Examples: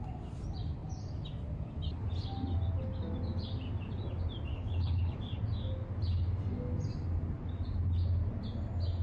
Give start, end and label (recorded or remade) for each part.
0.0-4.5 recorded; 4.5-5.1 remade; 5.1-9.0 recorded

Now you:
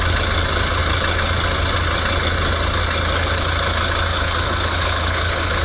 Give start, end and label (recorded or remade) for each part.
0.0-4.1 recorded; 4.1-5.6 remade

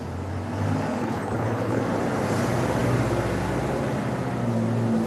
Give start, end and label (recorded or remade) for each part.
0.0-1.0 recorded; 1.0-1.8 remade; 1.8-5.1 recorded

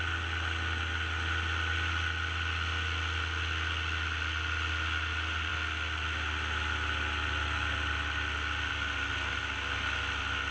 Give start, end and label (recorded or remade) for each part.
0.0-10.5 recorded